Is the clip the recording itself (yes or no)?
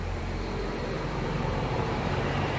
no